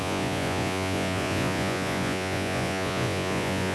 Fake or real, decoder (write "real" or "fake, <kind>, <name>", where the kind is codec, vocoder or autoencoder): fake, vocoder, Vocos